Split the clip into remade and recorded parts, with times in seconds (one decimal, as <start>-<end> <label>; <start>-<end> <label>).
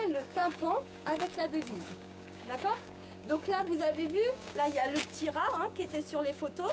0.0-6.7 remade